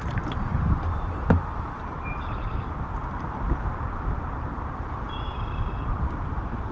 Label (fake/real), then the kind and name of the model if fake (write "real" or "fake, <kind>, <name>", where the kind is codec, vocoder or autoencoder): fake, vocoder, BigVGAN v2